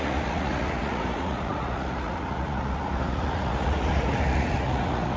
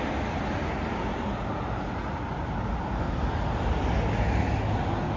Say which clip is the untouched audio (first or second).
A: second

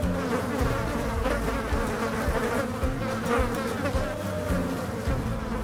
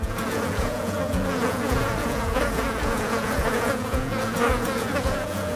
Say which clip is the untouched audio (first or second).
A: first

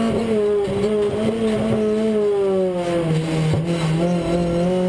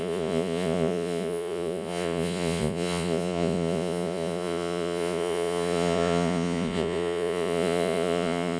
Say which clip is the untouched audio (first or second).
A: first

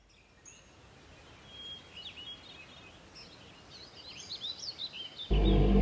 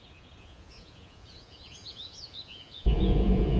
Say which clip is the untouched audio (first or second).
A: first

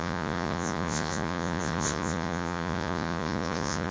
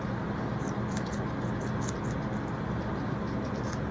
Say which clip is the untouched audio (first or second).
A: second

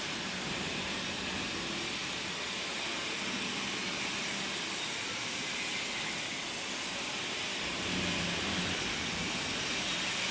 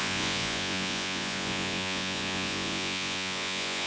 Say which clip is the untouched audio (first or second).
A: first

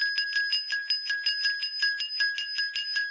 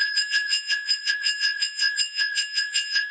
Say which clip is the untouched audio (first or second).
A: first